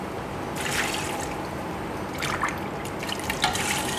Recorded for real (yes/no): yes